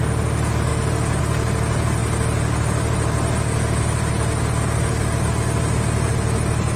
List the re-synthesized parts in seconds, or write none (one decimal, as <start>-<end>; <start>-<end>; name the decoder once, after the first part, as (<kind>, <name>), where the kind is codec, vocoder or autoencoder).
none